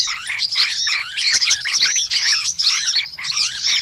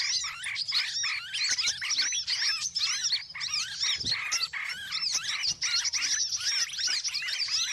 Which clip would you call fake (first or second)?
first